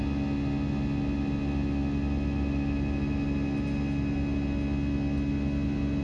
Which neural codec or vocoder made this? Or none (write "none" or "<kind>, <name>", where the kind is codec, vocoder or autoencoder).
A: none